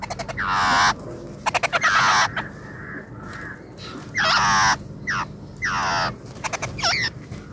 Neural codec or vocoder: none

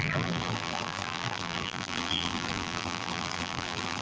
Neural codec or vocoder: vocoder, BigVGAN v2